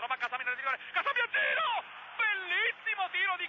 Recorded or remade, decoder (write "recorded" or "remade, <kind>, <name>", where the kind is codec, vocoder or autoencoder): recorded